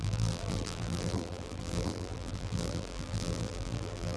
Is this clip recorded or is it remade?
remade